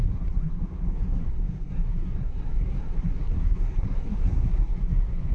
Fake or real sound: fake